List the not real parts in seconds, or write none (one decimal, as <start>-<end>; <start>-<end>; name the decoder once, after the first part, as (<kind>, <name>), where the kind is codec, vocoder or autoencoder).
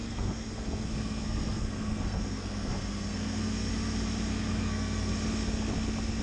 0.0-3.7 (codec, SNAC); 4.3-5.1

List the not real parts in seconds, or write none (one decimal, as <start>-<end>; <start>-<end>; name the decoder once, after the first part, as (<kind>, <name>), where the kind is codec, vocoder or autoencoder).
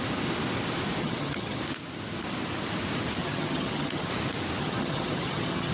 1.0-1.6 (vocoder, HiFi-GAN); 3.2-4.1; 4.6-5.7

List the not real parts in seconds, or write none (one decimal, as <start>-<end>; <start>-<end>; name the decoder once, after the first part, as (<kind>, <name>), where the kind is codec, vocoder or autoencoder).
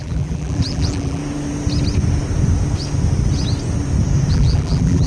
0.0-1.2 (vocoder, BigVGAN v2); 4.3-5.1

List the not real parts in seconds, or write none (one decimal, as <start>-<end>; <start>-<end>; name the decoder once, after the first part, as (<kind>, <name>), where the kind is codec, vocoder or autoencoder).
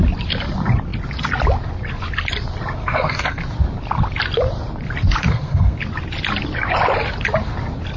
2.8-3.4 (codec, SNAC); 5.2-5.8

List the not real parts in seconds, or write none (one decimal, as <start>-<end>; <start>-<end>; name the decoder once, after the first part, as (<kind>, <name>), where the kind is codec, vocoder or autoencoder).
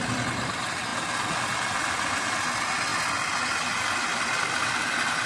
none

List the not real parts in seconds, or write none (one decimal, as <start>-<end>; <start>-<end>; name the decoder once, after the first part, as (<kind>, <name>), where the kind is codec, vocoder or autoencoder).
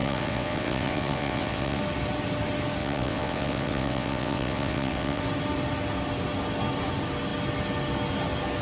0.0-1.8 (vocoder, WaveNeXt); 2.8-5.2